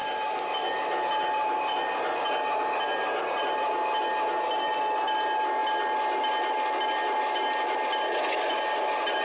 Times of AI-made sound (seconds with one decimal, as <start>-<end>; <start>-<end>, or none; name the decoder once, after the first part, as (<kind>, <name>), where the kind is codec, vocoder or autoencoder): none